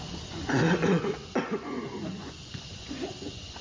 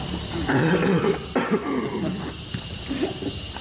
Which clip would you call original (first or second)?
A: second